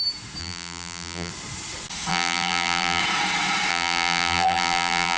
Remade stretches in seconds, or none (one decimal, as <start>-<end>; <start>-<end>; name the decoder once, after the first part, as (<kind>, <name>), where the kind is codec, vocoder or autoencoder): 0.4-1.3 (vocoder, BigVGAN v2); 2.1-3.0; 3.7-5.2